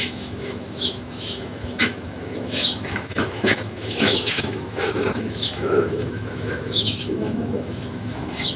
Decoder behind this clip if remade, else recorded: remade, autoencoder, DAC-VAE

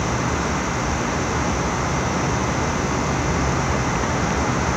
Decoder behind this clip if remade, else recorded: recorded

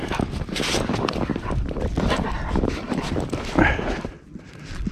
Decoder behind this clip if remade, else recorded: remade, vocoder, BigVGAN v2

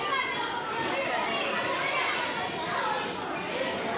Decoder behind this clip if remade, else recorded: recorded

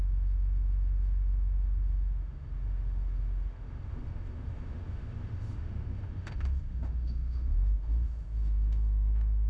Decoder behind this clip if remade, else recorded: remade, autoencoder, DAC-VAE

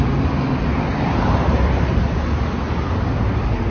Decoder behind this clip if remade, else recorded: recorded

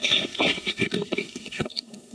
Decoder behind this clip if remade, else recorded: remade, codec, SNAC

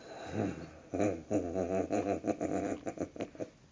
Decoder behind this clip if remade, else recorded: recorded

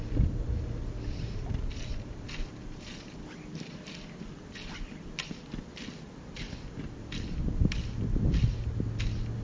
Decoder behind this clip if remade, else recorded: recorded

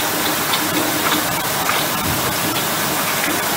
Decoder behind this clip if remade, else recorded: recorded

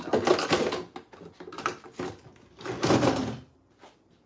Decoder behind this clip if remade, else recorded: recorded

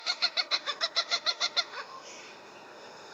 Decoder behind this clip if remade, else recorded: remade, autoencoder, DAC-VAE